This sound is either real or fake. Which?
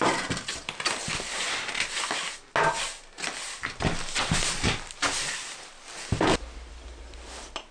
real